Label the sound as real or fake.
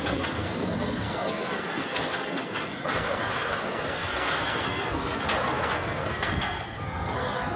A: fake